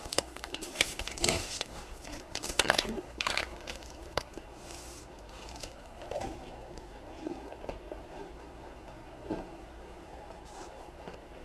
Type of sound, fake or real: fake